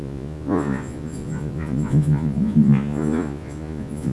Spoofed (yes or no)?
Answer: yes